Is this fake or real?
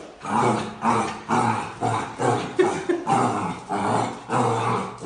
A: real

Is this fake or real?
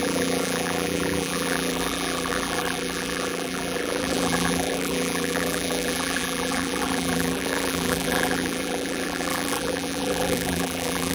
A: fake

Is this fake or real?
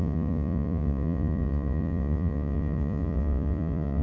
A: fake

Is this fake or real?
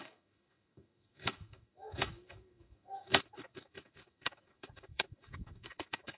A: fake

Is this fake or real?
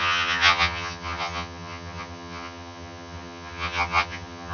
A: fake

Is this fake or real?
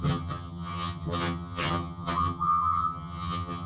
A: fake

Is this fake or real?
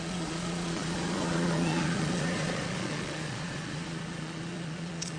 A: fake